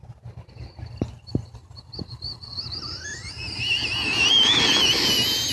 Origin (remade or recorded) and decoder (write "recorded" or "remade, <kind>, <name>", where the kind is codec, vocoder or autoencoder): recorded